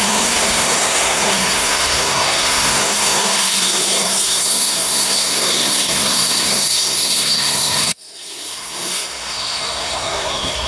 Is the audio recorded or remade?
remade